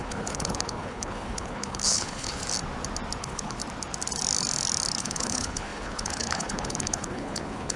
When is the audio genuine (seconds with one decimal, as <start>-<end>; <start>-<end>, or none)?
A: 2.4-3.2; 3.6-5.0